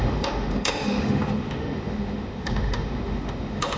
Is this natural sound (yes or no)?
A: no